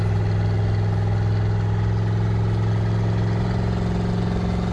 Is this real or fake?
real